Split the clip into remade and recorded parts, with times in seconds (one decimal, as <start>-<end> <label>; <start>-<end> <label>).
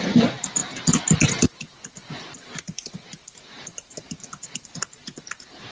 0.0-0.6 remade; 0.6-1.4 recorded; 1.4-5.7 remade